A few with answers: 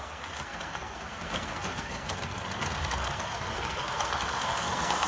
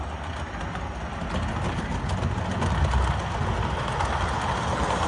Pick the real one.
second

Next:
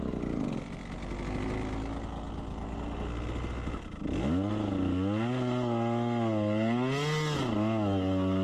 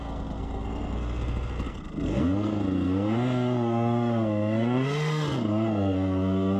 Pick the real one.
first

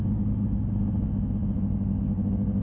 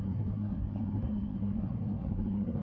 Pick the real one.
first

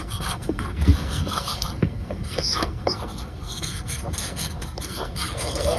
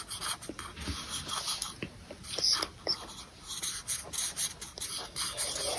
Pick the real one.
second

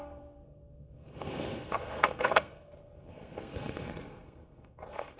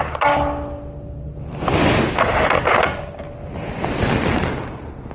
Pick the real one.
second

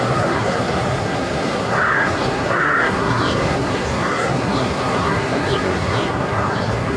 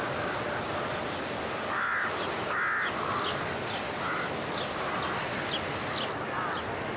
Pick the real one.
second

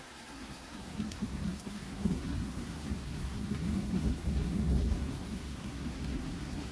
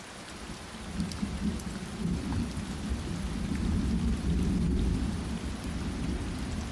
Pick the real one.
second